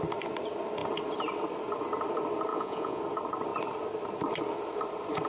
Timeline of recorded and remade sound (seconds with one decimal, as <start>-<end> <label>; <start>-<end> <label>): 0.0-2.5 recorded; 2.5-3.0 remade; 3.0-5.3 recorded